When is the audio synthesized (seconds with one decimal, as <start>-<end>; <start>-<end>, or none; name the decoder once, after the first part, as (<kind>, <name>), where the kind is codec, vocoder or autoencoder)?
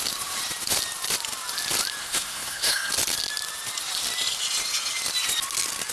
2.0-2.9 (codec, SNAC)